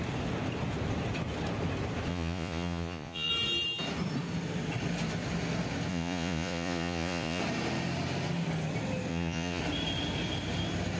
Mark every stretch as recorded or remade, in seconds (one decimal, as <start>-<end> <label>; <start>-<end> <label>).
0.0-2.1 recorded; 2.1-3.3 remade; 3.3-5.9 recorded; 5.9-7.4 remade; 7.4-9.1 recorded; 9.1-9.6 remade; 9.6-11.0 recorded